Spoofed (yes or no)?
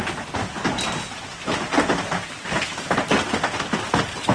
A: no